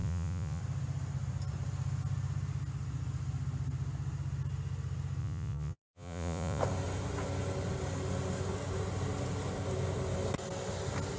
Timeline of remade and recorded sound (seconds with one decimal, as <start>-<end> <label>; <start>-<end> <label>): 0.0-0.6 remade; 0.6-5.2 recorded; 5.2-6.6 remade; 6.6-11.2 recorded